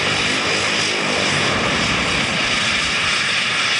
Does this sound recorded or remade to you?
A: recorded